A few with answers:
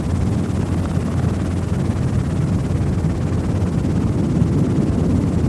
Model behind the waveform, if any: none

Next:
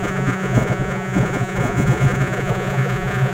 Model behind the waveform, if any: vocoder, Vocos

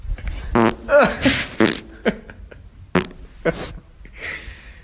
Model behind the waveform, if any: none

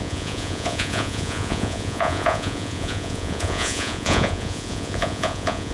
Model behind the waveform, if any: vocoder, Vocos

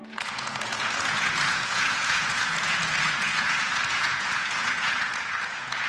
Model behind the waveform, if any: vocoder, Vocos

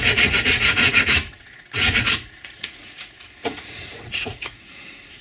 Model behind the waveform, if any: vocoder, Vocos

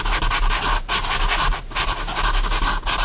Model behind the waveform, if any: none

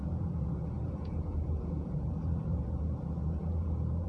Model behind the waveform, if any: vocoder, Vocos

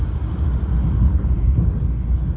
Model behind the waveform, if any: none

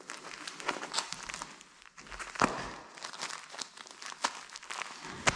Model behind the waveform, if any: none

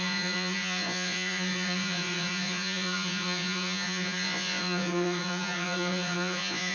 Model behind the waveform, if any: vocoder, Vocos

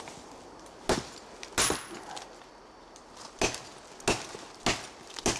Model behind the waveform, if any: none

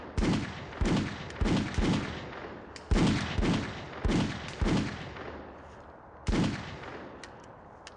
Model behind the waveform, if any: none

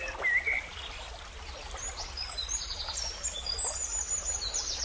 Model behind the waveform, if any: none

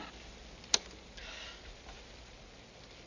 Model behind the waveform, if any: none